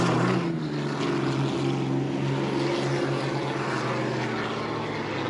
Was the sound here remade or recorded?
recorded